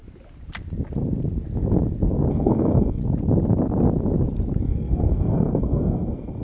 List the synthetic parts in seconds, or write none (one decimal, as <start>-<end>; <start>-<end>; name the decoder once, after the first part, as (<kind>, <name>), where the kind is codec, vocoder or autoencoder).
2.3-3.0 (codec, SNAC); 4.6-6.4